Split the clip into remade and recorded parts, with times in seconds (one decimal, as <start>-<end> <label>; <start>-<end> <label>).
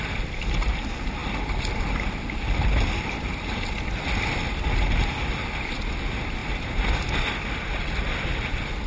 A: 0.0-8.9 recorded